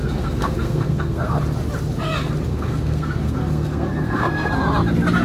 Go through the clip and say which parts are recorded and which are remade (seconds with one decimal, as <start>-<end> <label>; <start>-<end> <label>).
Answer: 0.0-1.4 remade; 1.4-2.5 recorded; 2.5-4.5 remade; 4.5-5.2 recorded